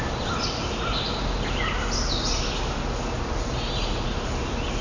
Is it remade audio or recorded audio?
recorded